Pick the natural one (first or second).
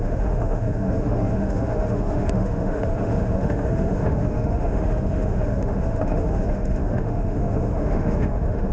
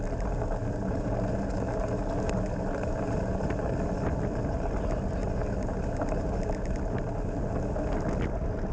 second